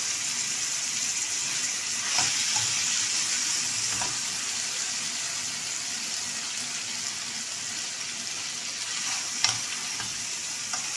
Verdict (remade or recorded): recorded